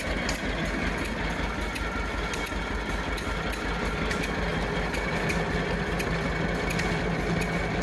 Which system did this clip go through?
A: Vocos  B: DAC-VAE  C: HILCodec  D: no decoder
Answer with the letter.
D